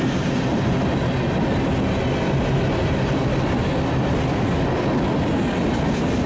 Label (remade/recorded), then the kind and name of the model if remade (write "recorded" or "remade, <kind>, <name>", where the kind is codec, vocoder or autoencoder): recorded